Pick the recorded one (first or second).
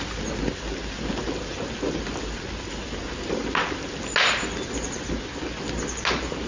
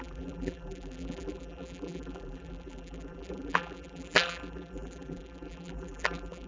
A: first